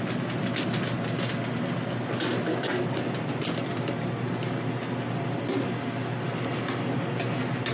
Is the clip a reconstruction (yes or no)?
no